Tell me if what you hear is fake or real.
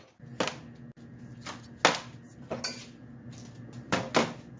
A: real